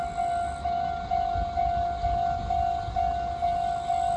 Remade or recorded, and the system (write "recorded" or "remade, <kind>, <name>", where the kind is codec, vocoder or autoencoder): recorded